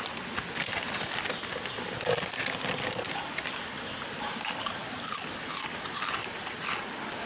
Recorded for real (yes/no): yes